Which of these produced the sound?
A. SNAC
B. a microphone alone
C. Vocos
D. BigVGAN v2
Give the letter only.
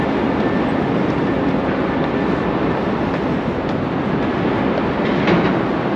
B